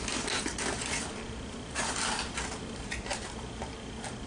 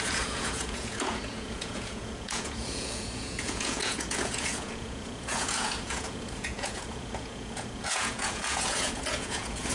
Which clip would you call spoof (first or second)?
second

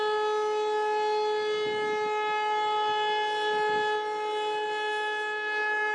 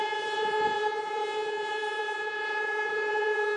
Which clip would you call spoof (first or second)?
second